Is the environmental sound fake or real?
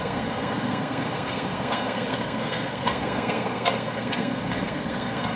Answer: fake